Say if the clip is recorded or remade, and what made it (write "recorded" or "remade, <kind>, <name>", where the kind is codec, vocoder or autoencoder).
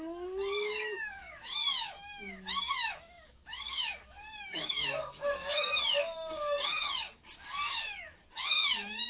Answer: remade, codec, DAC